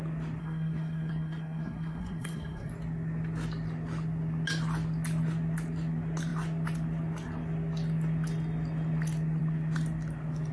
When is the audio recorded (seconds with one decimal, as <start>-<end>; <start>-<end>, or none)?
0.0-0.4; 2.7-10.5